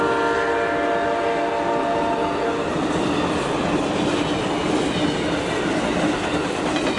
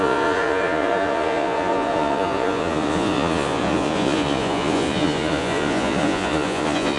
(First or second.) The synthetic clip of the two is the second